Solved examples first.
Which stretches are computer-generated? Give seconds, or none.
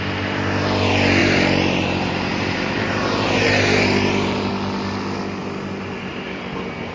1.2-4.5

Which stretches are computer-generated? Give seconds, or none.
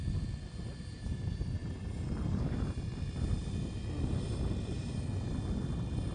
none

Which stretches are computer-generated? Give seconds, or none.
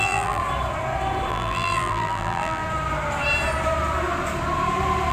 0.0-0.4; 1.3-2.6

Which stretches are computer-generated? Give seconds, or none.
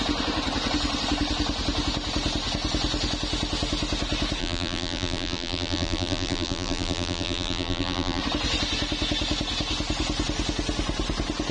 4.4-8.2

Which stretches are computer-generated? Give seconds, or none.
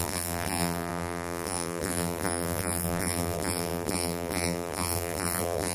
0.0-5.7